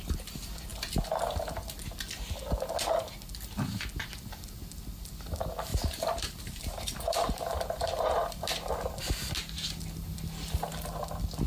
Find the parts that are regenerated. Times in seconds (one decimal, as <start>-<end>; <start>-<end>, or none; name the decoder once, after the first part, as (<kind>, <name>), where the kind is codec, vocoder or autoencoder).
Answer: 5.7-8.4 (vocoder, BigVGAN v2)